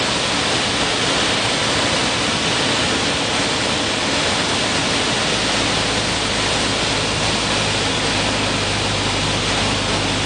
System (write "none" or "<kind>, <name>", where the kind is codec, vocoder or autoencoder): none